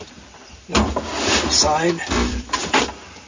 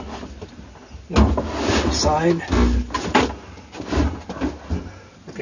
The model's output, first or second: first